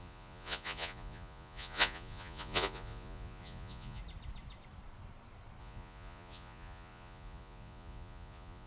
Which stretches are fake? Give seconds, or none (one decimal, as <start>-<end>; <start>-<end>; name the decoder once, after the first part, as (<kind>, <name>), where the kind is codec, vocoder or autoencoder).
0.0-4.0 (vocoder, Vocos); 5.6-8.7